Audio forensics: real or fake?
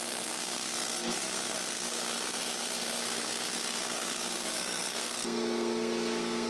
fake